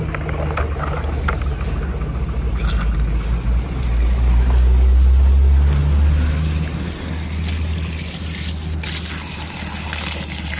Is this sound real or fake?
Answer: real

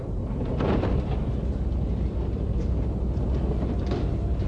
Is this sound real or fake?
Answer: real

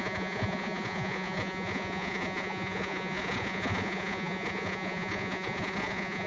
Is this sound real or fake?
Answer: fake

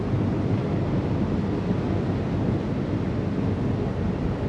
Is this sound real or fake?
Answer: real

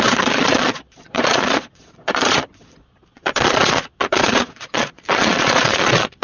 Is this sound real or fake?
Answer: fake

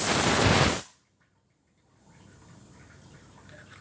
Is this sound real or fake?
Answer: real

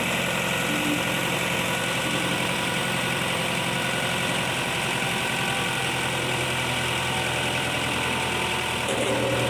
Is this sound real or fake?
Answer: real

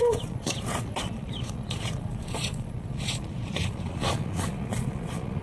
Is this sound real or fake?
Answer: fake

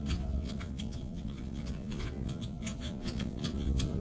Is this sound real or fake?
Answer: fake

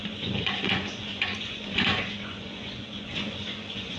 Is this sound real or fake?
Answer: fake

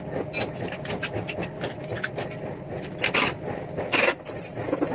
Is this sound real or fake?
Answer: real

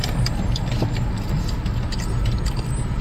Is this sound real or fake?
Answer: real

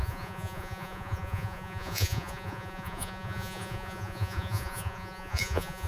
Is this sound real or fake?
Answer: fake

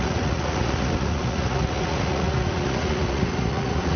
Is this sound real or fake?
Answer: fake